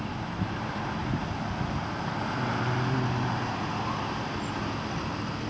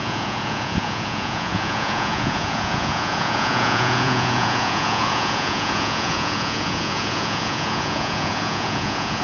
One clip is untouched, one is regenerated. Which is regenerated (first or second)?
second